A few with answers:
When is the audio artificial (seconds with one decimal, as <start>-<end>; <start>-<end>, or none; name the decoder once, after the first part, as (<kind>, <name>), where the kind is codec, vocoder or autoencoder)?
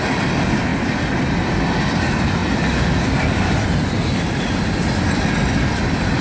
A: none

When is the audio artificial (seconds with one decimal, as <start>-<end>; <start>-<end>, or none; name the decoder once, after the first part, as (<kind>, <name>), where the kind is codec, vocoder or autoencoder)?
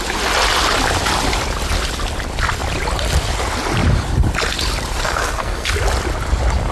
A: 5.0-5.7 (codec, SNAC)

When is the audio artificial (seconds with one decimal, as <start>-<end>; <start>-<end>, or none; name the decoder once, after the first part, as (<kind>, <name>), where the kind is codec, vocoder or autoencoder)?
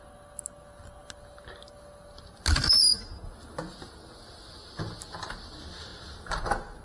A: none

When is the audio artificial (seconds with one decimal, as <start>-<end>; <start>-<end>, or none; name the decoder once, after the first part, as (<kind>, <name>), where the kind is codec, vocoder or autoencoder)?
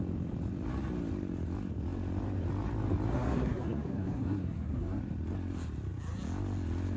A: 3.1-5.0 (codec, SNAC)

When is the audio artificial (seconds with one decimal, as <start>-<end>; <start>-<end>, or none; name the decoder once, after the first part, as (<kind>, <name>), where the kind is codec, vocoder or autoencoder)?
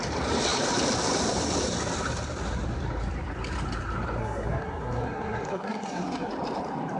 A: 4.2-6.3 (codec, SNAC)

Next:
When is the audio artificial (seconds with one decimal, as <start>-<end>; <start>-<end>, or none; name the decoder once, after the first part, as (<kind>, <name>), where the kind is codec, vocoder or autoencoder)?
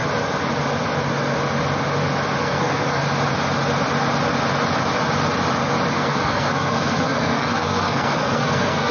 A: 2.4-3.0 (codec, SNAC); 5.9-8.9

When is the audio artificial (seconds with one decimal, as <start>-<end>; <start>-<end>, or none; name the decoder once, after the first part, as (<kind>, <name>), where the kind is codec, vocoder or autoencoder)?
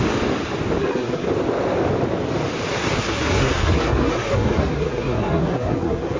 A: 0.8-1.3 (codec, SNAC); 2.7-6.2